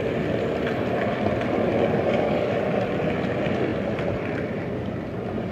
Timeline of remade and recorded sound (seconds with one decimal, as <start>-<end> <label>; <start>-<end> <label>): 0.0-1.7 recorded; 1.7-2.6 remade; 2.6-5.5 recorded